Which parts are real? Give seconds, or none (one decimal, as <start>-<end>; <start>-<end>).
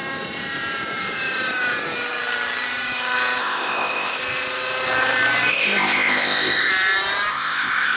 0.0-3.4; 4.2-5.5; 6.7-7.3